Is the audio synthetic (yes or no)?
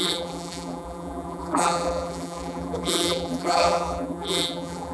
yes